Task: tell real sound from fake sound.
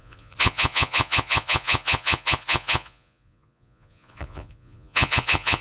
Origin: fake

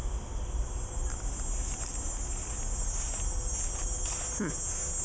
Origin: real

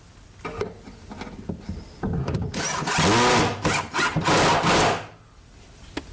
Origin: real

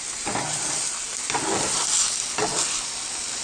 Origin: real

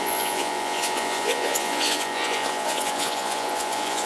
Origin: fake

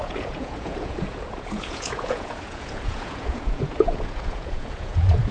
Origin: fake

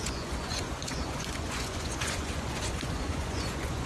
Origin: fake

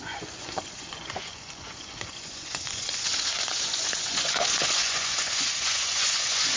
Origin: fake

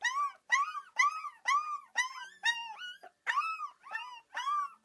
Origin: real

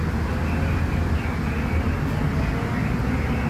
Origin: real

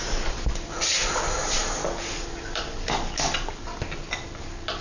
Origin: real